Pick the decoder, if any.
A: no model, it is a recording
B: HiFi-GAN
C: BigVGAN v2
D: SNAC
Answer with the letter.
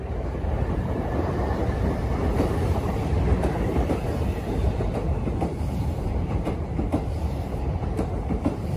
C